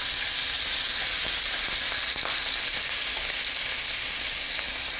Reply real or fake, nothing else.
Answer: real